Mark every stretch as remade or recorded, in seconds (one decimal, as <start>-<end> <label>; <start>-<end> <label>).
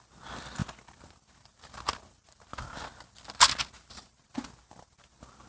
0.0-5.5 recorded